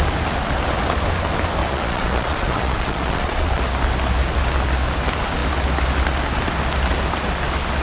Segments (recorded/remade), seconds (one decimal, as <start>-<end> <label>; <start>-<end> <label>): 0.0-1.6 recorded; 1.6-3.6 remade; 3.6-7.8 recorded